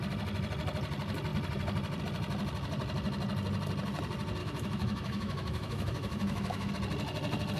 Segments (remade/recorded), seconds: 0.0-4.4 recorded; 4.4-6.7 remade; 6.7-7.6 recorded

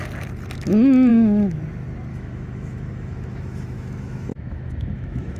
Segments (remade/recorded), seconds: 0.0-1.1 recorded; 1.1-1.6 remade; 1.6-2.1 recorded; 2.1-5.4 remade

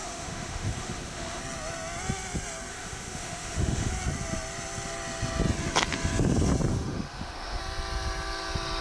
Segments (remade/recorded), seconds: 0.0-1.4 remade; 1.4-2.7 recorded; 2.7-3.9 remade; 3.9-6.7 recorded; 6.7-7.6 remade; 7.6-8.8 recorded

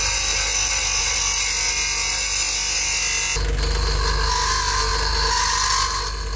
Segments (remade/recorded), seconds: 0.0-6.4 recorded

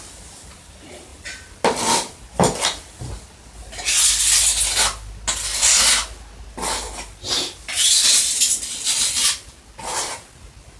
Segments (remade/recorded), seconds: 0.0-10.8 recorded

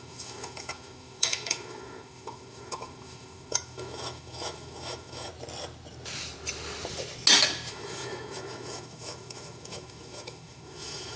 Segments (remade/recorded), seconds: 0.0-5.3 remade; 5.3-7.7 recorded; 7.7-11.2 remade

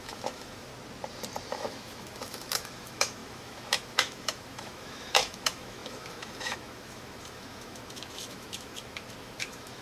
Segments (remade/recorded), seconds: 0.0-0.7 remade; 0.7-1.5 recorded; 1.5-9.8 remade

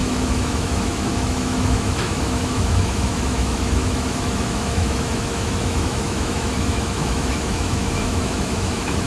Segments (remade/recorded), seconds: 0.0-9.1 remade